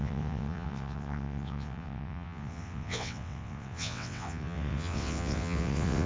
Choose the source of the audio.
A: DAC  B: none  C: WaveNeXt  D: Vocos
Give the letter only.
C